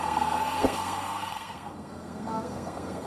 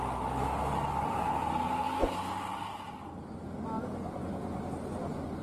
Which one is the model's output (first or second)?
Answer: first